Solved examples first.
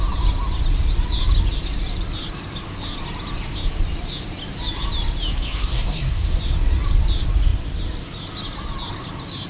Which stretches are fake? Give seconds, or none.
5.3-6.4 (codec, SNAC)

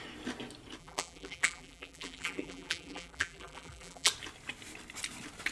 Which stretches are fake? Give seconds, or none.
0.8-4.1 (vocoder, BigVGAN v2)

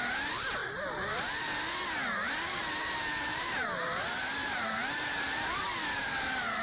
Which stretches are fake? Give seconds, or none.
3.3-4.0 (vocoder, BigVGAN v2); 4.4-5.5

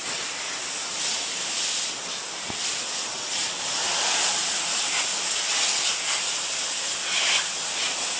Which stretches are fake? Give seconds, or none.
4.5-5.1 (vocoder, Vocos); 7.3-8.2

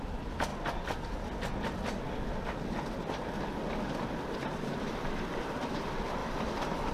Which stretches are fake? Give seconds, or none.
0.0-0.5 (vocoder, BigVGAN v2); 4.4-6.9

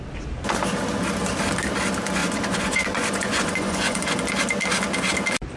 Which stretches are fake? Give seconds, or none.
2.2-4.0 (vocoder, Vocos)

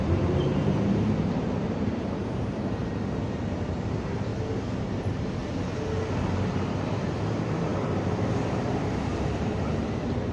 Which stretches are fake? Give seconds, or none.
0.0-2.8 (vocoder, BigVGAN v2); 3.9-4.3; 4.8-5.4; 6.1-10.3